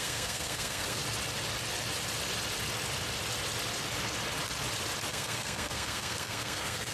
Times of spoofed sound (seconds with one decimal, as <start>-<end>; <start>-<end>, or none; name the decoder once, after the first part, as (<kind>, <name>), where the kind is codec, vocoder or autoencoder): 0.0-1.0 (codec, SNAC); 5.1-6.9

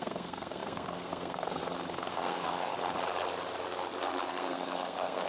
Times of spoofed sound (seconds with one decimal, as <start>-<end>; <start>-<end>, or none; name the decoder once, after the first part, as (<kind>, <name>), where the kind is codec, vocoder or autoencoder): 0.0-1.6 (codec, SNAC); 2.1-2.7; 4.3-5.3

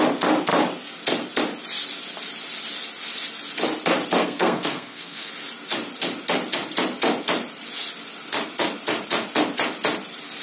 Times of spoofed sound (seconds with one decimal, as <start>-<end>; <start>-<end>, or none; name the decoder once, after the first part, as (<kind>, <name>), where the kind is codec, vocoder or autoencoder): 4.2-5.3 (codec, SNAC)

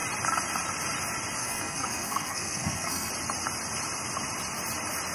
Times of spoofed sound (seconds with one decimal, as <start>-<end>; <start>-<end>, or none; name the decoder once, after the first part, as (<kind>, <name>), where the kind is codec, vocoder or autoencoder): 1.4-3.1 (codec, SNAC)

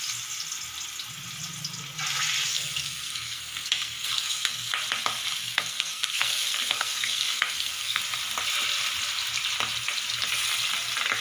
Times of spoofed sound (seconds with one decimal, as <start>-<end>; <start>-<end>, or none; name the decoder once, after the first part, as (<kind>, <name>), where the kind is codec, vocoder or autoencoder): 2.5-4.7 (codec, SNAC); 5.4-8.0

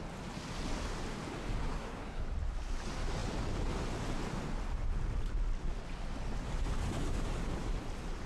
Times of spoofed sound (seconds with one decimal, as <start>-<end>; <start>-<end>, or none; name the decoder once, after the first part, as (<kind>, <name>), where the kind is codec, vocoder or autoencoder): 1.6-2.2 (codec, SNAC)

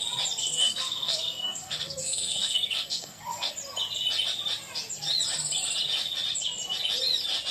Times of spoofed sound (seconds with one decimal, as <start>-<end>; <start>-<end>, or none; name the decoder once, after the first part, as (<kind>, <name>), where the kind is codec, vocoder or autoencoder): 0.4-3.5 (codec, SNAC)